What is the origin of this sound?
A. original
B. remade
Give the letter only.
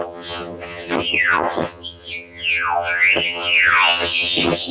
B